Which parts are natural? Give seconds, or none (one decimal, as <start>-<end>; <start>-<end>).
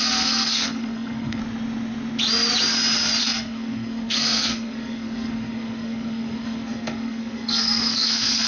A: 1.4-3.2